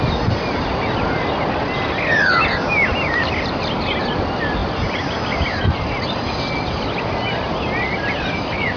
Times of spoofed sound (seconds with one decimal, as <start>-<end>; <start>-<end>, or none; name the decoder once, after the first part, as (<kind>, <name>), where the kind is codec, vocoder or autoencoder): none